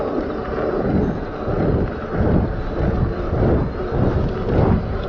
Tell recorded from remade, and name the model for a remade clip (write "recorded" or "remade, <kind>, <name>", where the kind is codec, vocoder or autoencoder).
recorded